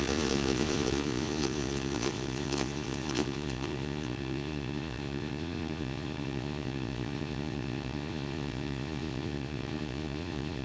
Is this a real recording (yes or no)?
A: no